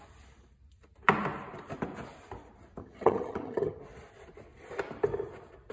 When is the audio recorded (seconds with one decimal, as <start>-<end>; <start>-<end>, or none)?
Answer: 0.0-2.8; 3.8-5.7